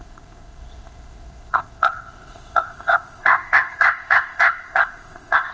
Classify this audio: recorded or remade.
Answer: remade